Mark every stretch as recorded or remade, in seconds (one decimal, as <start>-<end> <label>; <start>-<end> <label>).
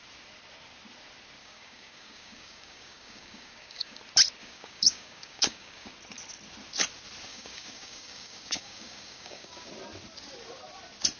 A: 0.0-1.4 recorded; 1.4-4.0 remade; 4.0-4.4 recorded; 4.4-5.9 remade; 5.9-7.3 recorded; 7.3-9.7 remade; 9.7-11.2 recorded